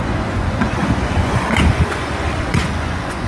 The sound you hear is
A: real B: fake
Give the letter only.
B